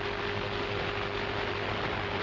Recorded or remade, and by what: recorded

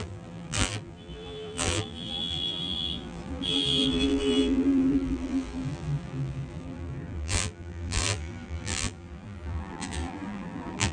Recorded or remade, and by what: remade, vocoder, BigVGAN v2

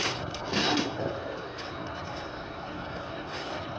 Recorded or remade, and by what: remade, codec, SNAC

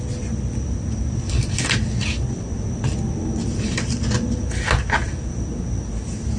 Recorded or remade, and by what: recorded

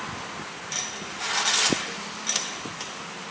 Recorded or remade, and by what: recorded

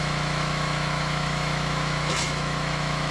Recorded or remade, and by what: remade, autoencoder, DAC-VAE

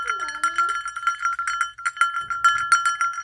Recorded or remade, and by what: recorded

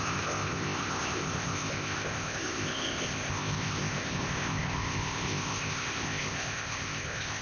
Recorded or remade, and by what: remade, codec, ZipCodec